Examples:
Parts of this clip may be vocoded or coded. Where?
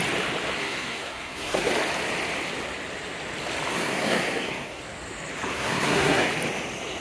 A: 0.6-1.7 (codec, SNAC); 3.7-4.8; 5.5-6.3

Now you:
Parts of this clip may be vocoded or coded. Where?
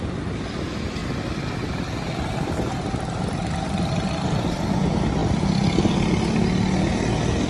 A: none